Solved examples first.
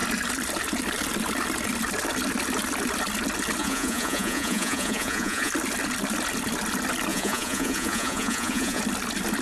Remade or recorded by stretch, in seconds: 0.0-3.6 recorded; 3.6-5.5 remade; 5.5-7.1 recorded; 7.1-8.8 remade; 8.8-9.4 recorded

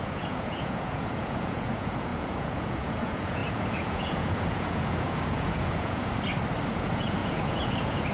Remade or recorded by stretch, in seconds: 0.0-6.1 remade; 6.1-6.7 recorded; 6.7-8.1 remade